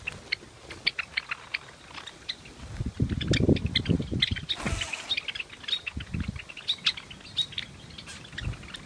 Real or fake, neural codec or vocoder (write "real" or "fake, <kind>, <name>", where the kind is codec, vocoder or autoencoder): real